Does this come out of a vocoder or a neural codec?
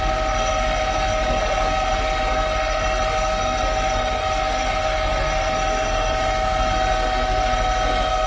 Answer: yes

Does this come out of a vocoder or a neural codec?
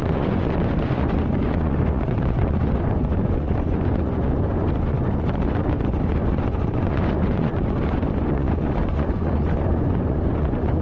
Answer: yes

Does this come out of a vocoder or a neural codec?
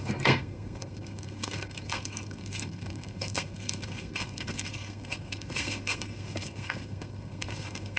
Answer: yes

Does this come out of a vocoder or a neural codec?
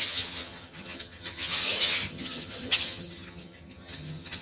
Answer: yes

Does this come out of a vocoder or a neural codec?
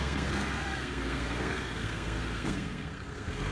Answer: yes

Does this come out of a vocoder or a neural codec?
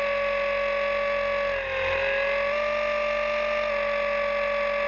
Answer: no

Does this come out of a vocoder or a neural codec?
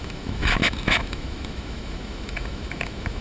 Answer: yes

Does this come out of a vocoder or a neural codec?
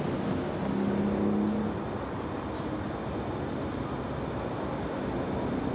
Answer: no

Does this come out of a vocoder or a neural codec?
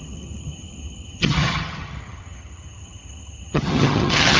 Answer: yes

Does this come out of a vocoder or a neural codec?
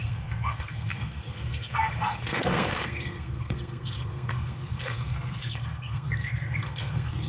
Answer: yes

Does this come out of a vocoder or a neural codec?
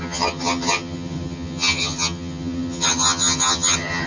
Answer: yes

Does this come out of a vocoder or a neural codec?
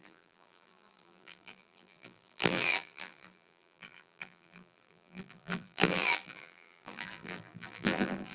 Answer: yes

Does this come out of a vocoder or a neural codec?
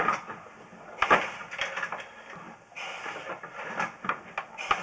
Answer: no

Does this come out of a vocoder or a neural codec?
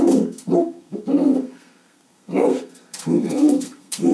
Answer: yes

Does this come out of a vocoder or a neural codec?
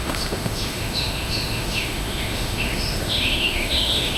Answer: yes